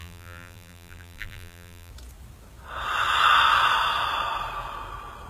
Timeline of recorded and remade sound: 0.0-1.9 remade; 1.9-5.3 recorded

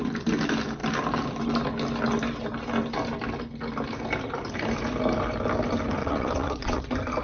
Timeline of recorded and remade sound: 0.0-6.0 recorded; 6.0-6.8 remade; 6.8-7.2 recorded

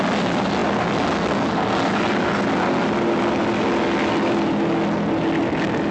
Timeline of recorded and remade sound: 0.0-5.9 recorded

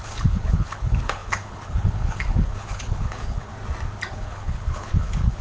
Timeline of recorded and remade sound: 0.0-3.5 remade; 3.5-4.1 recorded; 4.1-5.4 remade

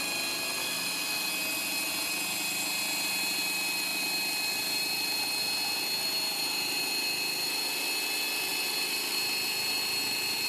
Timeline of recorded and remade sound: 0.0-0.6 recorded; 0.6-1.3 remade; 1.3-10.5 recorded

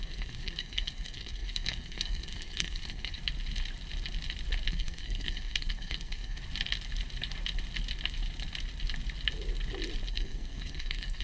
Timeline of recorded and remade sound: 0.0-3.2 remade; 3.2-4.7 recorded; 4.7-6.4 remade; 6.4-10.1 recorded; 10.1-11.2 remade